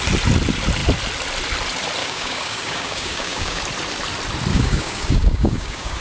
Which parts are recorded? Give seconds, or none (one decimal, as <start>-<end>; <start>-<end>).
0.0-2.0; 3.6-4.5